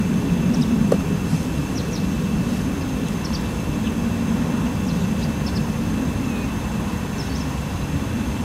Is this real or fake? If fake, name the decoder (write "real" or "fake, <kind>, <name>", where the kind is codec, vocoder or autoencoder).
real